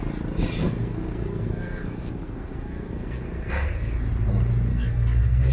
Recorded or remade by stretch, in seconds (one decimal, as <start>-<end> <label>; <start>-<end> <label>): 0.0-0.6 recorded; 0.6-3.9 remade; 3.9-4.7 recorded; 4.7-5.5 remade